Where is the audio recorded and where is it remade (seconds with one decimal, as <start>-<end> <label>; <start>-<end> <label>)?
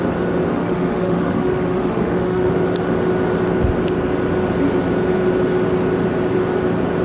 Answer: 0.0-0.5 recorded; 0.5-2.5 remade; 2.5-7.0 recorded